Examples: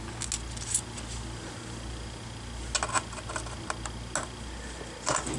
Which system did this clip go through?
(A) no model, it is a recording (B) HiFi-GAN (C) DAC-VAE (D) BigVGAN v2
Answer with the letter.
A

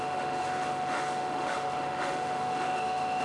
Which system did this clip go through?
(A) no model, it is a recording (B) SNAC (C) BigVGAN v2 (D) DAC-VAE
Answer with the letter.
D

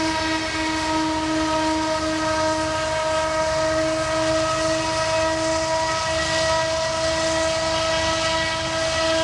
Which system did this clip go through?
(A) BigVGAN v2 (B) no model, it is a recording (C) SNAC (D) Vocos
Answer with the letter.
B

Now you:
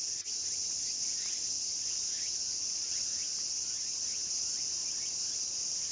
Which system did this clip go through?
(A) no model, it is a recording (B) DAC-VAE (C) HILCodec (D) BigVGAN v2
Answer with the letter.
A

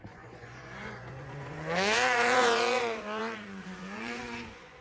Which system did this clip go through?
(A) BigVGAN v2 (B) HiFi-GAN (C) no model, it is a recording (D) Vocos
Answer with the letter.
D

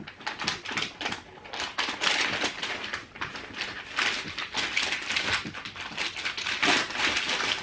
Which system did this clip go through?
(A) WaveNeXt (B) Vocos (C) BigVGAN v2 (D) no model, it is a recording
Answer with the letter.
C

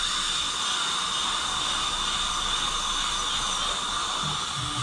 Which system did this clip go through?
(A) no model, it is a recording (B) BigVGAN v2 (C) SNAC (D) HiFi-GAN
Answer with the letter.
A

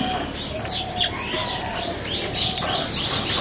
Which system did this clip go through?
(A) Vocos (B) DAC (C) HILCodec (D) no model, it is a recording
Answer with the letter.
D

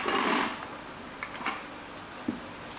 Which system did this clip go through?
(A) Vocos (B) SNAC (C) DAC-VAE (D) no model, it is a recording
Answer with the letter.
D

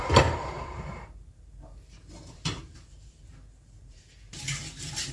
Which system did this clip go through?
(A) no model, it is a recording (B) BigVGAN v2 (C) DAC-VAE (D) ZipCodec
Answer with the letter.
B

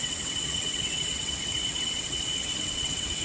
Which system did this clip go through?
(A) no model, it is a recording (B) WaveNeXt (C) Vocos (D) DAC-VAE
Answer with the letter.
B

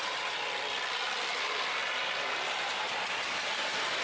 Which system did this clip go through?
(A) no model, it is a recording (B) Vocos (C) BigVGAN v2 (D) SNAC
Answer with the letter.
A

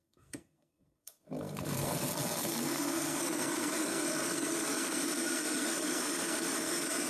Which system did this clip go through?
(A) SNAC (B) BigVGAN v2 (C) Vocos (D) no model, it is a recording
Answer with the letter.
A